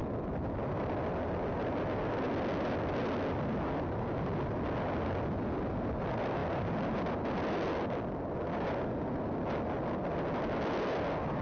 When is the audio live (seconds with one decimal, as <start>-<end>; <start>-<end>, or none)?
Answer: 0.0-11.4